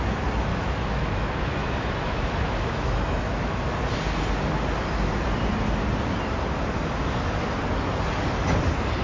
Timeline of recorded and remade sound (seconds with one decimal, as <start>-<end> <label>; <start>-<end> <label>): 0.0-0.5 recorded; 0.5-3.6 remade; 3.6-9.0 recorded